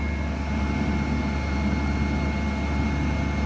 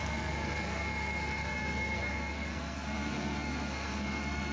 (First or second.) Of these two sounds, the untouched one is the first